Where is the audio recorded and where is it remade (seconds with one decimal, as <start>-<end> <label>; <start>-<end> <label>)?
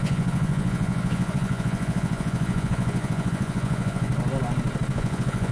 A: 0.0-4.1 remade; 4.1-4.9 recorded; 4.9-5.5 remade